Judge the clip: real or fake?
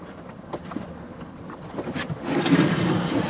real